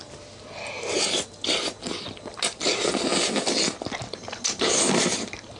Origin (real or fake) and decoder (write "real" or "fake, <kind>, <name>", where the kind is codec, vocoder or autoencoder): real